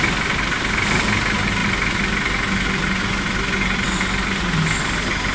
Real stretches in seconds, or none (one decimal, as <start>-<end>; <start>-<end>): 0.0-5.3